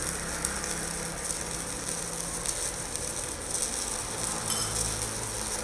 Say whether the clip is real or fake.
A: real